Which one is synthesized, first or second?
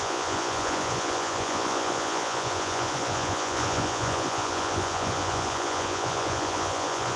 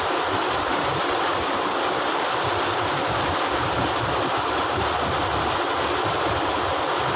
first